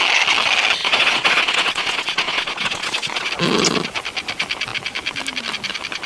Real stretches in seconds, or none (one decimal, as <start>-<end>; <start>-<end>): 0.0-0.8; 3.3-6.1